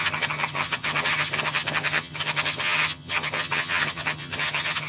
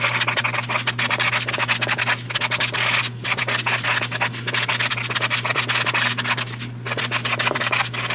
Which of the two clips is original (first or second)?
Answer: second